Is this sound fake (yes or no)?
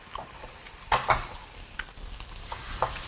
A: no